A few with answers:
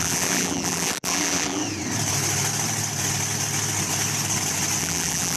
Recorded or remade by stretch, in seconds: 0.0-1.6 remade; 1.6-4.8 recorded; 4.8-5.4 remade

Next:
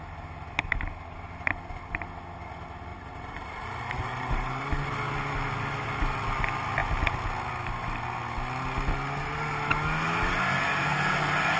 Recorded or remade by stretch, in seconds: 0.0-2.9 recorded; 2.9-4.6 remade; 4.6-11.6 recorded